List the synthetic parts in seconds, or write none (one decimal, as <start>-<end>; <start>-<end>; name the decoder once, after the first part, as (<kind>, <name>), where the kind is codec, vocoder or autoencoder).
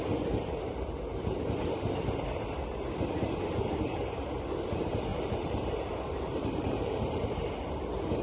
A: 5.1-7.7 (vocoder, BigVGAN v2)